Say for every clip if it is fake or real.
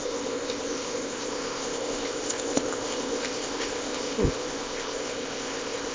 fake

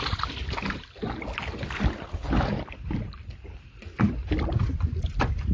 real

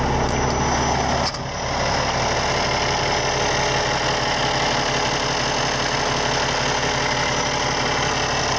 real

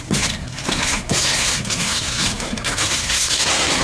fake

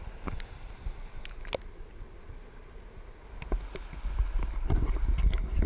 real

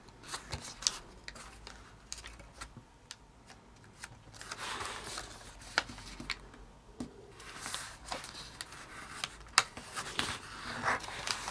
real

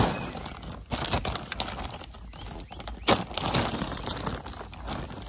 real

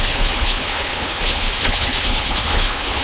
fake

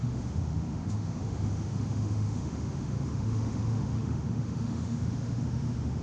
fake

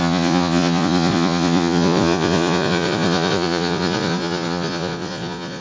fake